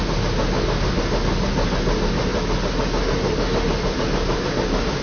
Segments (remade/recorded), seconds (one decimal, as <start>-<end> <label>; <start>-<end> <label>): 0.0-5.0 recorded